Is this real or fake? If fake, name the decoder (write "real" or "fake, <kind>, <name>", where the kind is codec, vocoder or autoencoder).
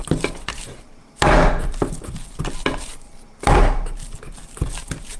real